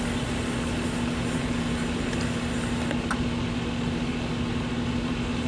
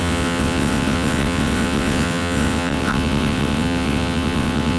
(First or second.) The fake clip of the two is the second